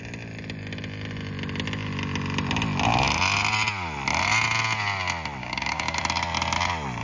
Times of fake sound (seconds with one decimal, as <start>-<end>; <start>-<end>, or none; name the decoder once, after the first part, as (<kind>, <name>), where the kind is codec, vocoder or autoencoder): 5.4-6.0 (codec, DAC)